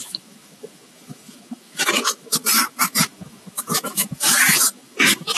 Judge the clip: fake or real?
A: fake